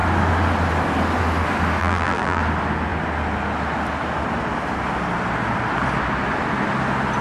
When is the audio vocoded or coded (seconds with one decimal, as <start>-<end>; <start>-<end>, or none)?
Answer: 1.8-2.4